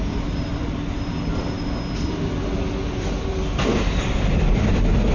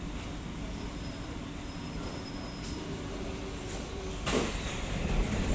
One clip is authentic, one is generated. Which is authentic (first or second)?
first